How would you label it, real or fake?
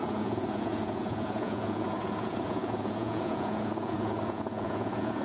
fake